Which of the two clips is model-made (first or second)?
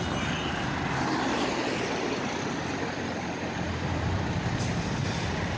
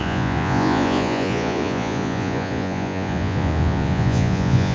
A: second